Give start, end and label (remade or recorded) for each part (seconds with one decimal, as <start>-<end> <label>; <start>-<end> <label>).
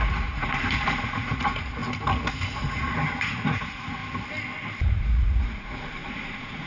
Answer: 0.0-1.8 remade; 1.8-2.3 recorded; 2.3-4.0 remade; 4.0-4.9 recorded; 4.9-6.7 remade